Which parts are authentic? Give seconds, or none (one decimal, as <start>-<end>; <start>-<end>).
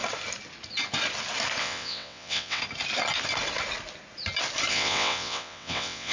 0.0-1.6; 2.6-4.7